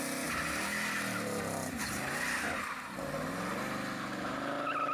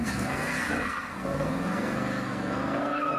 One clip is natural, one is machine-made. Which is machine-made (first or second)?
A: second